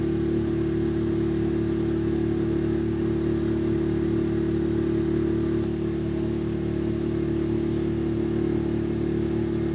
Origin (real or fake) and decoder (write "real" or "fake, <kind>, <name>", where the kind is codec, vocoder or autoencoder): real